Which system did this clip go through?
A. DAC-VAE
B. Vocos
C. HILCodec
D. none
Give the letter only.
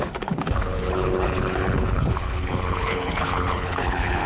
C